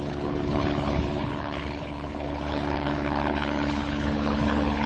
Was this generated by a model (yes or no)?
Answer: yes